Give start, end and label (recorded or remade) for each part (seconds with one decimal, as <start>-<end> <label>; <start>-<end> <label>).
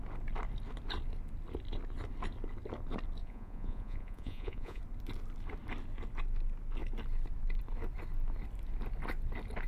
0.0-3.2 recorded; 3.2-4.8 remade; 4.8-9.7 recorded